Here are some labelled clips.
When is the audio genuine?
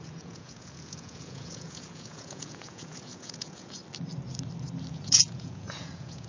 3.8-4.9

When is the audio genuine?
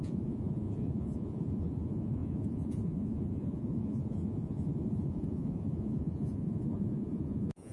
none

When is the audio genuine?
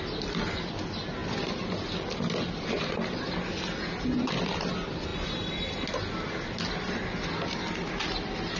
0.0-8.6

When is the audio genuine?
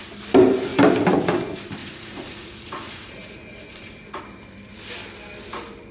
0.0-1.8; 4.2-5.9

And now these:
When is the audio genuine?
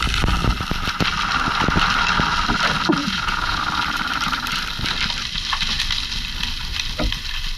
0.0-3.0; 3.6-7.6